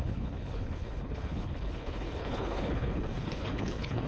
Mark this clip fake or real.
fake